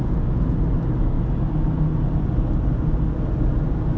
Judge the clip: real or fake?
real